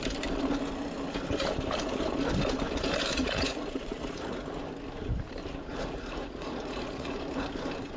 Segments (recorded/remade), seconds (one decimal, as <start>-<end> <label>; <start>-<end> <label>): 0.0-3.1 recorded; 3.1-4.6 remade; 4.6-5.7 recorded; 5.7-7.1 remade; 7.1-8.0 recorded